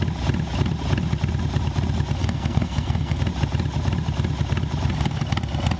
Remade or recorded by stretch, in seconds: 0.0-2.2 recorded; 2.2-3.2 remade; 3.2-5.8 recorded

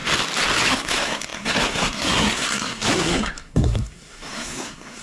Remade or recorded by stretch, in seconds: 0.0-0.7 recorded; 0.7-5.0 remade

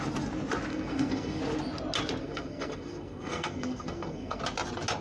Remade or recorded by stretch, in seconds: 0.0-0.7 recorded; 0.7-1.4 remade; 1.4-2.2 recorded; 2.2-4.4 remade; 4.4-5.0 recorded

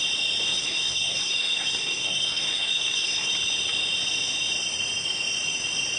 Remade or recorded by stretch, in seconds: 0.0-0.5 recorded; 0.5-3.3 remade; 3.3-6.0 recorded

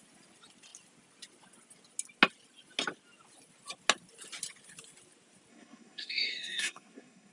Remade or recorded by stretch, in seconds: 0.0-5.5 recorded; 5.5-7.3 remade